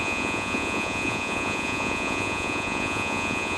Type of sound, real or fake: fake